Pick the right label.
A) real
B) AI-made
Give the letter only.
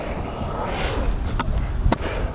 A